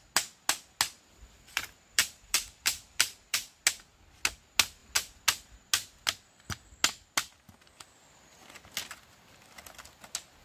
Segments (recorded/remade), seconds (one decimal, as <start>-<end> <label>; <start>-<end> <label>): 0.0-1.5 recorded; 1.5-3.6 remade; 3.6-10.4 recorded